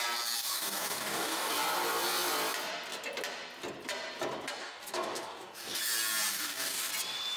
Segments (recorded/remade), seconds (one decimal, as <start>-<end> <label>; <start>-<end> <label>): 0.0-0.4 recorded; 0.4-1.5 remade; 1.5-4.6 recorded; 4.6-5.8 remade; 5.8-6.3 recorded; 6.3-6.9 remade; 6.9-7.4 recorded